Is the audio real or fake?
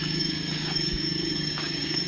fake